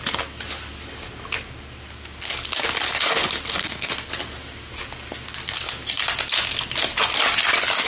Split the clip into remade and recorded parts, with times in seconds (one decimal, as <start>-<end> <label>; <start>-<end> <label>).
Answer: 0.0-3.6 recorded; 3.6-4.1 remade; 4.1-7.9 recorded